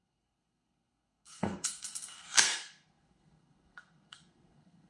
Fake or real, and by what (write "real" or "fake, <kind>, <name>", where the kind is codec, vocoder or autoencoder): fake, codec, SNAC